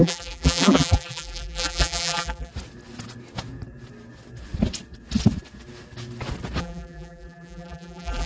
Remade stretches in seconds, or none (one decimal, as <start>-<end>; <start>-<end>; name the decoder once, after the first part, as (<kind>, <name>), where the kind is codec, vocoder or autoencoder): 0.0-2.5 (vocoder, BigVGAN v2); 6.6-8.3